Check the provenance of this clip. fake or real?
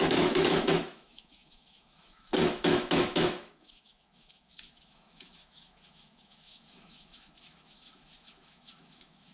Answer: fake